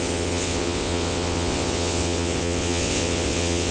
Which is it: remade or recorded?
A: remade